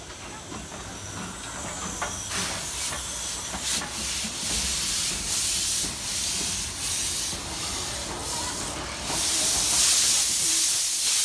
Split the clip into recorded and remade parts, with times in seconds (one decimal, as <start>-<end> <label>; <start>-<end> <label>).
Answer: 0.0-11.2 recorded